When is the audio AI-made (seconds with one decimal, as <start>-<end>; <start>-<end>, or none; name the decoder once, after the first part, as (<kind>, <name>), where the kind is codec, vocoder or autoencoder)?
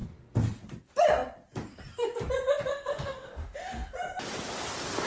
2.7-3.9 (autoencoder, DAC-VAE)